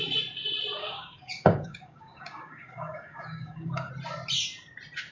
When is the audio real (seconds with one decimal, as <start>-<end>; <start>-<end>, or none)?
0.0-0.8; 3.9-5.1